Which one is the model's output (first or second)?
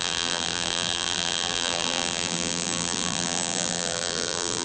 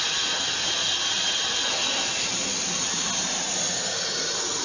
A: first